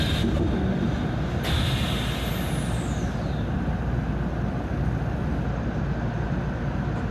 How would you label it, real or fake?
real